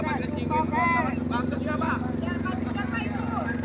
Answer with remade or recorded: recorded